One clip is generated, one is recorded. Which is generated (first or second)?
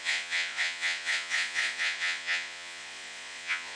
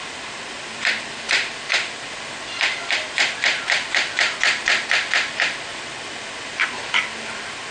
first